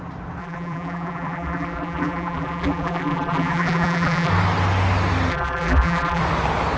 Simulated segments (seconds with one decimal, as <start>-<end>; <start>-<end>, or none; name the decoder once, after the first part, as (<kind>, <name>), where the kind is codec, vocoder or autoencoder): 0.4-4.3 (vocoder, BigVGAN v2); 5.3-6.2